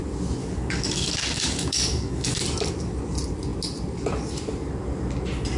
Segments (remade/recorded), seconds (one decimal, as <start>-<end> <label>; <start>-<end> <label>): 0.0-0.4 recorded; 0.4-2.4 remade; 2.4-5.6 recorded